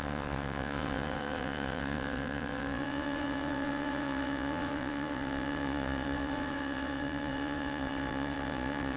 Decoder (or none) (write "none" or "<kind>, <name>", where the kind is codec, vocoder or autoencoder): vocoder, WaveNeXt